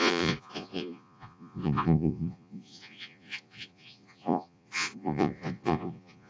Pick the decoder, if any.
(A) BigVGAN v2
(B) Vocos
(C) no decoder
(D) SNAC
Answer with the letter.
B